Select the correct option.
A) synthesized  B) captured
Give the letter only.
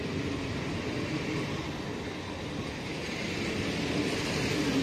B